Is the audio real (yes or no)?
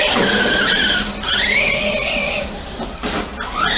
yes